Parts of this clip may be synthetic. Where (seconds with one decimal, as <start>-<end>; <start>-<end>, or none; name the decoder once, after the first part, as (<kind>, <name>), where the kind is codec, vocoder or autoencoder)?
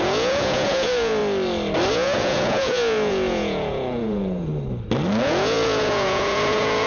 0.0-1.2 (vocoder, Vocos); 1.9-4.5; 5.2-6.9